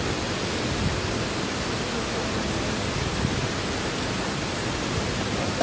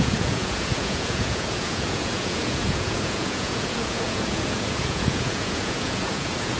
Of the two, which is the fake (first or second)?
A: second